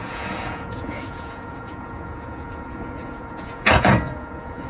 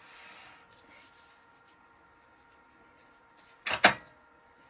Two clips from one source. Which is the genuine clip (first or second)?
second